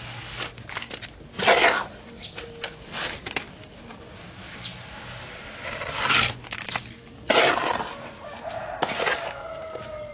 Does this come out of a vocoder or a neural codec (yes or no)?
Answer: no